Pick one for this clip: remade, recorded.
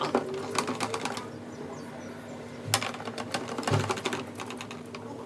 recorded